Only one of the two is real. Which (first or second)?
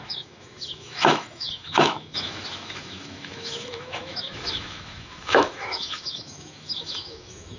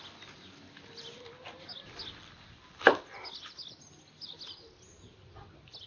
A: second